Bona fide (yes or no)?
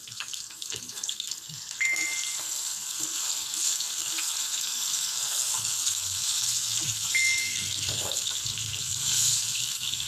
no